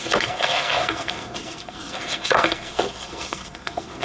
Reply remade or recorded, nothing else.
remade